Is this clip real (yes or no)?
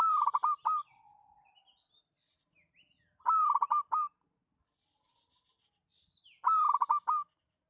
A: yes